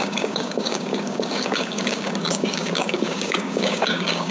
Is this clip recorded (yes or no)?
no